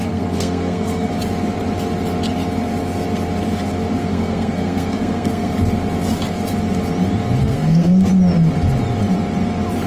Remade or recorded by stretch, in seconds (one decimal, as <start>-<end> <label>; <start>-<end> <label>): 0.0-1.1 remade; 1.1-4.0 recorded; 4.0-5.5 remade; 5.5-7.4 recorded; 7.4-8.1 remade; 8.1-9.9 recorded